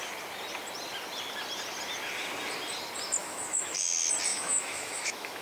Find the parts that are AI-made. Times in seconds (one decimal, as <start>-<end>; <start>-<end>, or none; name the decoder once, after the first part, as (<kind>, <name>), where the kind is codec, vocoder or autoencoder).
3.2-3.8 (autoencoder, DAC-VAE); 4.3-5.4